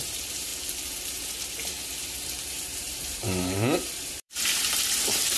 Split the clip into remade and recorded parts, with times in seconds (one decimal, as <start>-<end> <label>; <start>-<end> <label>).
0.0-0.5 remade; 0.5-2.5 recorded; 2.5-5.4 remade